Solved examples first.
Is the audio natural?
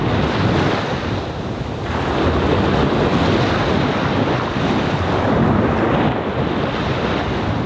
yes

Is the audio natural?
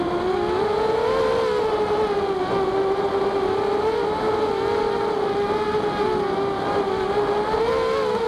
yes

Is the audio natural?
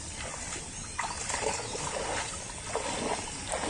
yes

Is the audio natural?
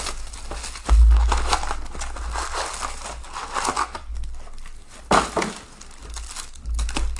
yes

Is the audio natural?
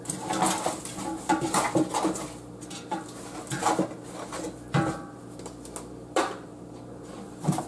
yes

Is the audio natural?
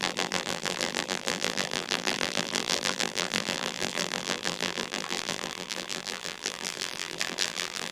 no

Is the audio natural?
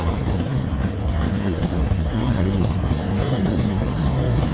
no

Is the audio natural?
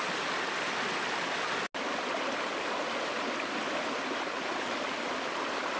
yes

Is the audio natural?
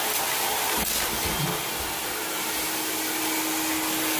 yes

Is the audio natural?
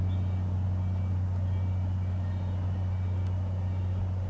yes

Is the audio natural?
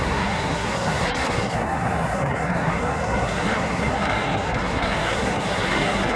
no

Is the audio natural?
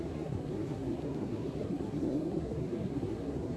no